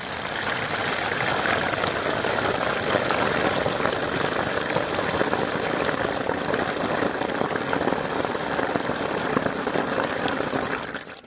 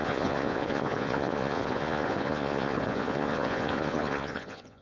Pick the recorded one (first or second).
first